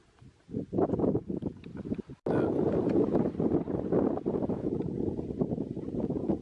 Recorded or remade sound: recorded